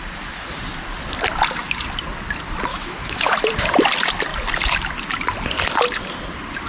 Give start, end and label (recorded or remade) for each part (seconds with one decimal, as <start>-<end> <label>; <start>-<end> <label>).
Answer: 0.0-2.7 recorded; 2.7-3.3 remade; 3.3-6.7 recorded